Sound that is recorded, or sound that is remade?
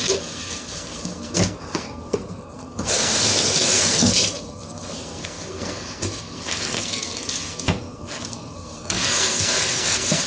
remade